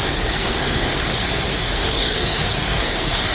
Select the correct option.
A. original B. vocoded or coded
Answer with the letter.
B